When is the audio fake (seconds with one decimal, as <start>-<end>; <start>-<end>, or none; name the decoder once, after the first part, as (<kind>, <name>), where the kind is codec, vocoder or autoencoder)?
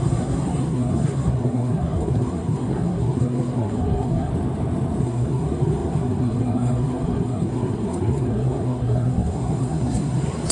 0.0-4.3 (codec, SNAC); 5.0-10.5